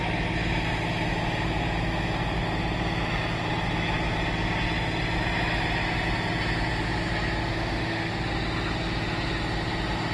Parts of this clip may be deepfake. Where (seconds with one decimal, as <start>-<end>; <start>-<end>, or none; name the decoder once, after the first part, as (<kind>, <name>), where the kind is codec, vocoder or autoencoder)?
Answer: 7.5-8.1 (autoencoder, DAC-VAE)

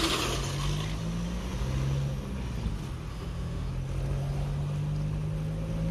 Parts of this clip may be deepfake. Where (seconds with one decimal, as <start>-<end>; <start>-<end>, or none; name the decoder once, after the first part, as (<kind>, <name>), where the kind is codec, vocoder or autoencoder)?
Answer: 3.1-3.7 (autoencoder, DAC-VAE)